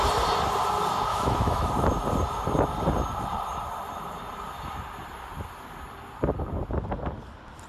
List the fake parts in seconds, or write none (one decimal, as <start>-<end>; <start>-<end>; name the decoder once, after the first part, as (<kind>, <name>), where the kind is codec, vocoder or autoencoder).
1.1-1.7 (autoencoder, DAC-VAE)